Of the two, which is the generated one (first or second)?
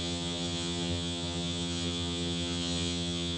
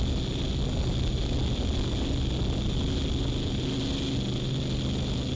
first